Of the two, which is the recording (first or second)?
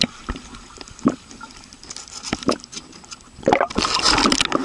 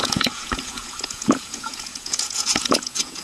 first